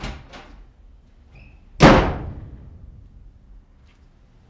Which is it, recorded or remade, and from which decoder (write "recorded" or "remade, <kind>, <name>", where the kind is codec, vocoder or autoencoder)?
recorded